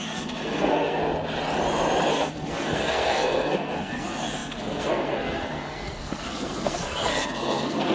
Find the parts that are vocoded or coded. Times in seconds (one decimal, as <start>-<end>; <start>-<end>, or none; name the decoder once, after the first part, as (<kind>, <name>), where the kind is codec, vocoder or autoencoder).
0.0-1.0 (codec, SNAC); 2.1-7.9